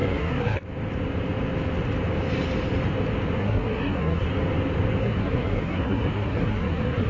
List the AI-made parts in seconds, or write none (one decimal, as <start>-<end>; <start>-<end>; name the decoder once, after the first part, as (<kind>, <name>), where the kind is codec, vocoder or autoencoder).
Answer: 0.0-0.6 (codec, SNAC); 3.4-4.3; 5.0-7.1

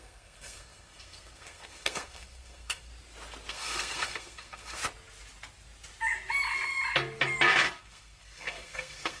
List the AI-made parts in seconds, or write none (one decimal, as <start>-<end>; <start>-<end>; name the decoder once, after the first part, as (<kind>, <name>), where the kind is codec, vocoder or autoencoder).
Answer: 0.0-2.9 (codec, SNAC); 3.5-4.8; 7.8-9.2

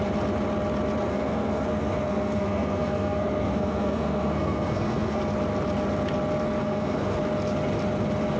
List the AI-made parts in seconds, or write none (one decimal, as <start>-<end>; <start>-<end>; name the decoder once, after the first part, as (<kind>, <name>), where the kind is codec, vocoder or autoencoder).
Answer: 1.1-5.2 (codec, SNAC); 6.6-7.2

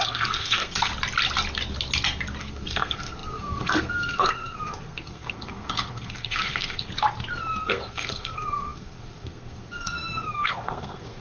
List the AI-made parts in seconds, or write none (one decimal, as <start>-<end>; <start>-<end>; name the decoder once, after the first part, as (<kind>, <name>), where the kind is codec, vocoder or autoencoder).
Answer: 0.0-0.9 (codec, SNAC); 2.4-6.9; 7.6-11.2

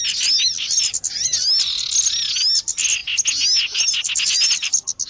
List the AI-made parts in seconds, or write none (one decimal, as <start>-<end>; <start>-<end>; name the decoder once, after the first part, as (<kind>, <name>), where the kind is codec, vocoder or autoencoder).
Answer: none

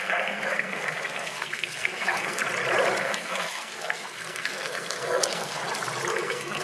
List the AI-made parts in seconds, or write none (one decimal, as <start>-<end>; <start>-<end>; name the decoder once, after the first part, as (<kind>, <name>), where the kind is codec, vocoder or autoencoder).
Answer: 0.0-2.4 (codec, SNAC); 3.0-5.6; 6.1-6.6